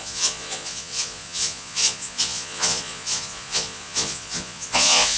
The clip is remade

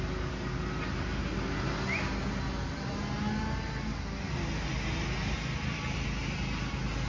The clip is recorded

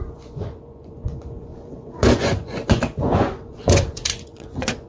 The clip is remade